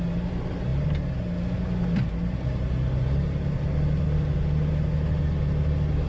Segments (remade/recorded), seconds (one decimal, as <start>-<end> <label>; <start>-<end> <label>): 0.0-6.1 recorded